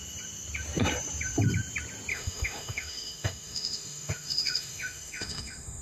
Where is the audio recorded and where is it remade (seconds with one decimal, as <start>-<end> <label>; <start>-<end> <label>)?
0.0-2.1 recorded; 2.1-5.8 remade